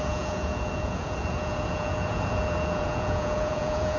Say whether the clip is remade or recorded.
remade